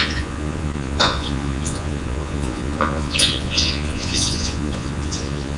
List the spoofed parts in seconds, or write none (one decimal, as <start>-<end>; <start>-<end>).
0.0-5.6